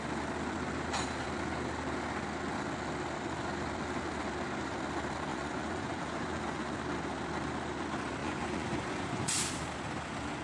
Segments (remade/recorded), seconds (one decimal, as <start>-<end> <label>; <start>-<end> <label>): 0.0-5.3 recorded; 5.3-6.8 remade; 6.8-8.2 recorded; 8.2-9.3 remade; 9.3-10.4 recorded